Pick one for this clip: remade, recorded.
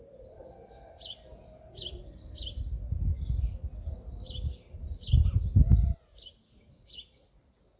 recorded